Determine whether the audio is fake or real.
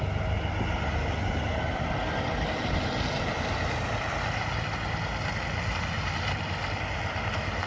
real